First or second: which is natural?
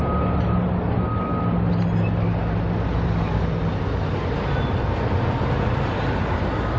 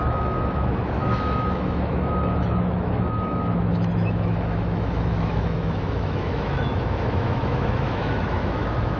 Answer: first